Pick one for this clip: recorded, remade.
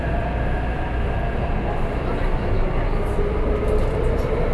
recorded